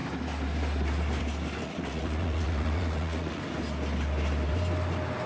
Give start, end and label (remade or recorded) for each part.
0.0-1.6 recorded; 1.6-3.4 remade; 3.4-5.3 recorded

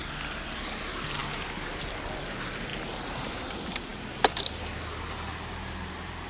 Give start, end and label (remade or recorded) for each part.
0.0-6.3 recorded

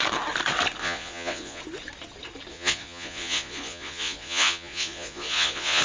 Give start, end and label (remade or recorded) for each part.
0.0-0.8 recorded; 0.8-1.6 remade; 1.6-2.5 recorded; 2.5-5.8 remade

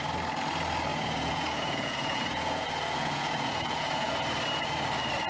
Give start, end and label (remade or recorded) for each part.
0.0-0.9 recorded; 0.9-4.1 remade; 4.1-5.3 recorded

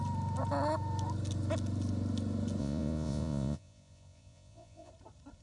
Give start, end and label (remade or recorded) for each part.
0.0-2.6 recorded; 2.6-4.9 remade; 4.9-5.4 recorded

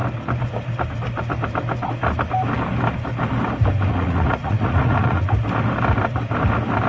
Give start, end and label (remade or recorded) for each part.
0.0-3.9 recorded; 3.9-5.3 remade; 5.3-6.9 recorded

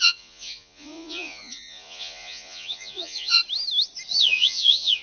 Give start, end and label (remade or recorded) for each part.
0.0-3.4 remade; 3.4-4.2 recorded; 4.2-5.0 remade